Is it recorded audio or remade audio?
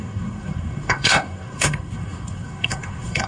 remade